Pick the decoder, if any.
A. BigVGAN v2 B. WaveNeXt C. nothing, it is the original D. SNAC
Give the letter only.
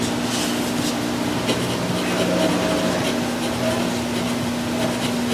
C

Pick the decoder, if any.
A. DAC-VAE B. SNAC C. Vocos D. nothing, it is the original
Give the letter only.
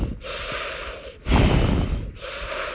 D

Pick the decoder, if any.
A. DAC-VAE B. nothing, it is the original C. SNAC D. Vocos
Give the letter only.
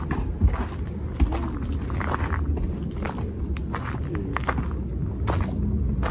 B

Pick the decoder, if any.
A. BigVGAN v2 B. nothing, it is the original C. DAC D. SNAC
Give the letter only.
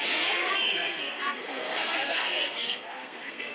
D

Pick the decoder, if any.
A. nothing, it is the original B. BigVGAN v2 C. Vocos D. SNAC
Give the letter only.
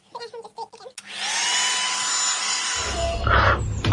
A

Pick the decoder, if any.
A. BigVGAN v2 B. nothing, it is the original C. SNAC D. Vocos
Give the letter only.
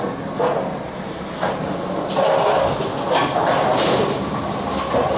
B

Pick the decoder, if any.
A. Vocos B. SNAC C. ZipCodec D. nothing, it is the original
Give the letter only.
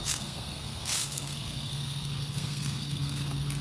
B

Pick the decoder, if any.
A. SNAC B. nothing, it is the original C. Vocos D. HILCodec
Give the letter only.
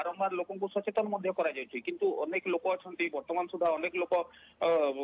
B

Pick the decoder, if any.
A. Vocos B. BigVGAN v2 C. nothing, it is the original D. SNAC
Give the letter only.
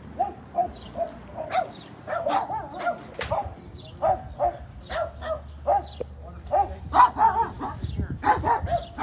C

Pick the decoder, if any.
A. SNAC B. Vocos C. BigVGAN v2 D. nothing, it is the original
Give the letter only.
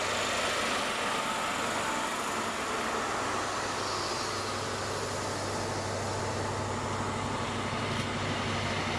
D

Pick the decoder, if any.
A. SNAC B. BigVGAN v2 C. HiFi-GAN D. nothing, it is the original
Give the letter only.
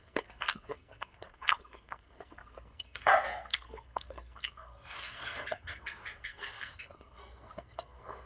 A